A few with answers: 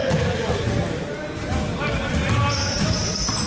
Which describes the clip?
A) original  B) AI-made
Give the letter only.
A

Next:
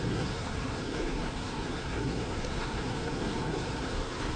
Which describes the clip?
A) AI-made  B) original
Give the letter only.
A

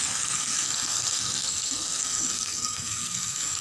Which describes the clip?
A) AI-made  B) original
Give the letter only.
A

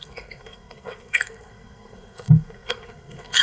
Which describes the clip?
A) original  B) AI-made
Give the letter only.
B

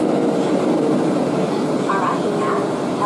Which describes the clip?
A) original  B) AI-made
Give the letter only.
A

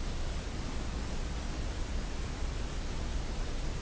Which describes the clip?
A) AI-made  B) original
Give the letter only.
B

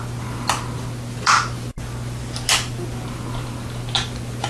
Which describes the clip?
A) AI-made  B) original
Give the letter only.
B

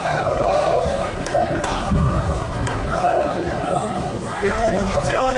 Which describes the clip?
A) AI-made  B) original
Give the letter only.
A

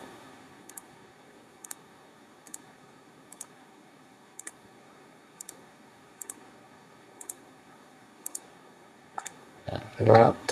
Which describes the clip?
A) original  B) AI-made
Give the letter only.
B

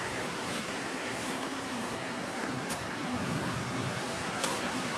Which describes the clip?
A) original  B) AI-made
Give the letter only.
B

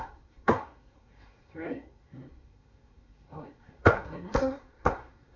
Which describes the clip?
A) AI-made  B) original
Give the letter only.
A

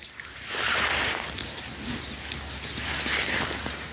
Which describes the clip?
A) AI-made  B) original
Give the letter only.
B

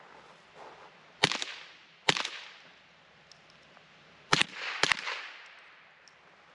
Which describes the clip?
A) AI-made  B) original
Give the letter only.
B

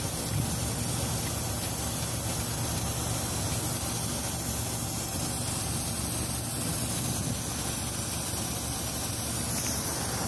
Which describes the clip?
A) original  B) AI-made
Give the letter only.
A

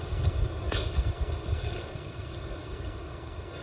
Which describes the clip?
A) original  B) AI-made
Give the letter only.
B